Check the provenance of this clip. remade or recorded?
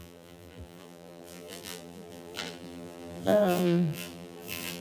remade